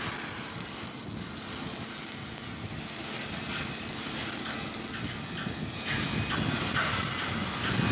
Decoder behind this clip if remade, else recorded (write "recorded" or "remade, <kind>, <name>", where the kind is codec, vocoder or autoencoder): recorded